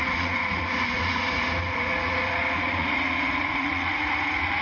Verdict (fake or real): fake